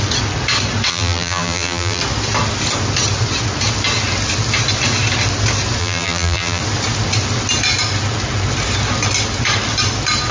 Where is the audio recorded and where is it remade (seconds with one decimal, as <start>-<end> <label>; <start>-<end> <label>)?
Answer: 0.0-0.9 recorded; 0.9-2.0 remade; 2.0-5.8 recorded; 5.8-6.6 remade; 6.6-10.3 recorded